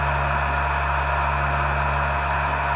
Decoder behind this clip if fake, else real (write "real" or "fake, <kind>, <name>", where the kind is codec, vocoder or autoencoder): real